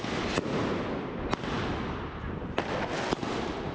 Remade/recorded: recorded